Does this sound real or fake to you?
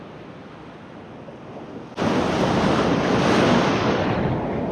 real